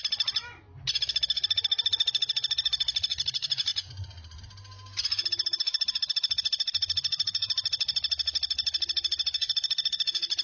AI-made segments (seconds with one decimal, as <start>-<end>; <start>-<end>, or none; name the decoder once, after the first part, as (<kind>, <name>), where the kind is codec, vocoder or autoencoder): none